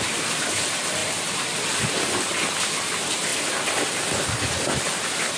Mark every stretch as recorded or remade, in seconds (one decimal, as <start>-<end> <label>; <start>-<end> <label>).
0.0-1.0 recorded; 1.0-1.6 remade; 1.6-5.4 recorded